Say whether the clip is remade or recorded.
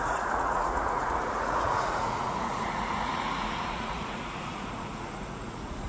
remade